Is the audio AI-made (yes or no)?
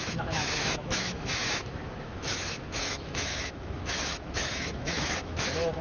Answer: yes